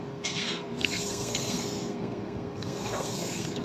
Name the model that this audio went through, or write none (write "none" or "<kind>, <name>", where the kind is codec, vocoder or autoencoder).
codec, SNAC